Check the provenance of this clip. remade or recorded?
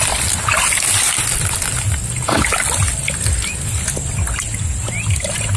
recorded